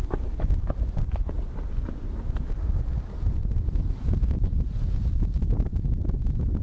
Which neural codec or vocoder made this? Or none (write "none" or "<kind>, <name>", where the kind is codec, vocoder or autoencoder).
none